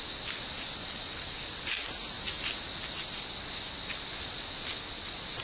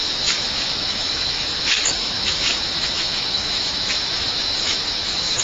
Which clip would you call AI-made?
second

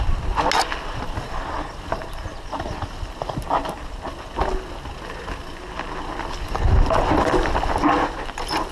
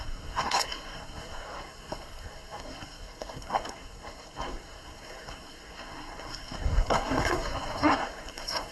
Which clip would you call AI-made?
second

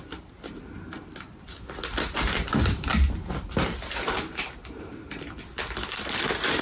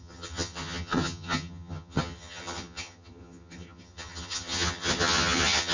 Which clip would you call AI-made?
second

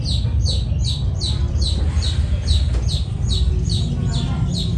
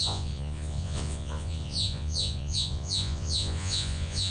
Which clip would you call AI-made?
second